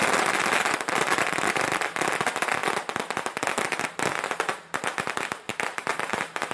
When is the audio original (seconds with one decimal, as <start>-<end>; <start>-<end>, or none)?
0.0-6.5